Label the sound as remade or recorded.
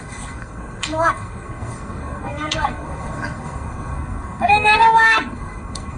remade